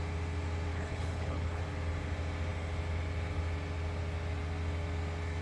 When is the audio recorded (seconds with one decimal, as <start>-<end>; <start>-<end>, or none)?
0.0-0.7; 1.6-5.4